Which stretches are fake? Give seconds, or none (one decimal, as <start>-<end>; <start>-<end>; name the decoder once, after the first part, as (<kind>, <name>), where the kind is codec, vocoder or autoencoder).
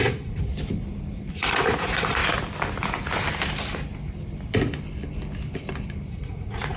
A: 0.0-0.5 (vocoder, Vocos); 1.3-2.2; 6.1-6.8